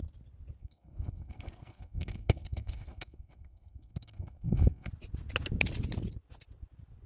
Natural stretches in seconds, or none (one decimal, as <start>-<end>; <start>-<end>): 0.0-0.6; 4.9-7.1